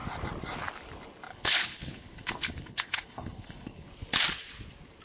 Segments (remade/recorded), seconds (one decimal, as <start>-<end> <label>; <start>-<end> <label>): 0.0-1.3 recorded; 1.3-3.9 remade; 3.9-5.0 recorded